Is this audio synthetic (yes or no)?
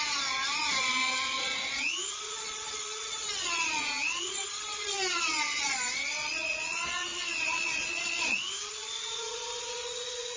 yes